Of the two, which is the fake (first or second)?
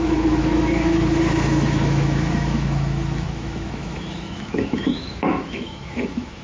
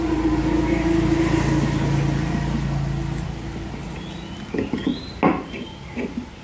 first